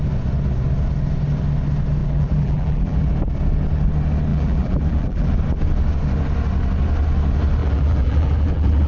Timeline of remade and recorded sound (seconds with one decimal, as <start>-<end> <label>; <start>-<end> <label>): 0.0-2.0 recorded; 2.0-3.1 remade; 3.1-4.3 recorded; 4.3-5.3 remade; 5.3-7.6 recorded; 7.6-8.9 remade